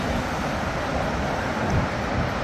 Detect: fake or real real